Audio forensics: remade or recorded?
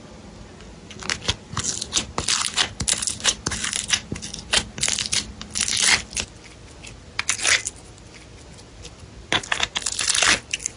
recorded